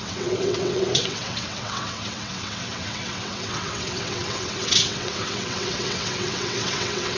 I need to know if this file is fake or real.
fake